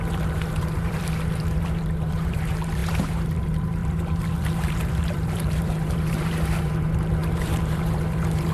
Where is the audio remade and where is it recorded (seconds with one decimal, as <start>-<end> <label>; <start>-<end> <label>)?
0.0-8.5 remade